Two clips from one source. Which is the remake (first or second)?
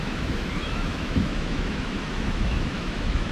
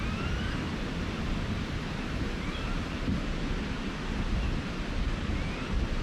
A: first